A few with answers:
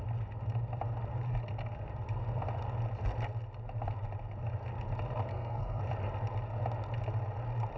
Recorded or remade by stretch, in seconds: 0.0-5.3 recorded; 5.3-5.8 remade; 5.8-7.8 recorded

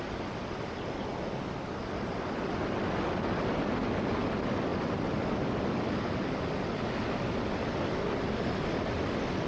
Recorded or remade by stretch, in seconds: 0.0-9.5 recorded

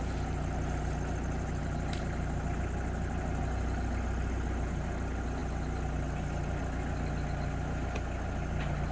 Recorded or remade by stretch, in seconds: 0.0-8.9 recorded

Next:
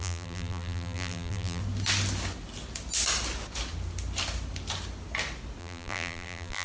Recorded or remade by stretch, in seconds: 0.0-1.6 remade; 1.6-5.6 recorded; 5.6-6.6 remade

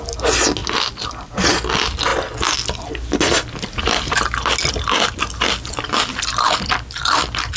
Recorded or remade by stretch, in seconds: 0.0-7.6 recorded

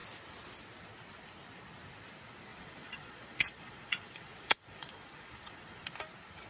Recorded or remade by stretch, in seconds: 0.0-2.5 recorded; 2.5-5.8 remade; 5.8-6.5 recorded